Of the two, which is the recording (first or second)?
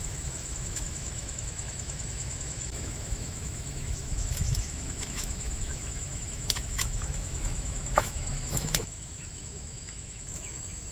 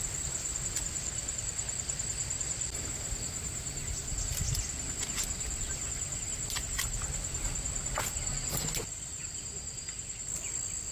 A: second